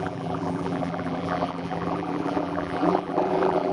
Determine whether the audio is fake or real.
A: fake